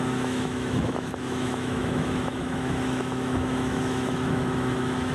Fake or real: fake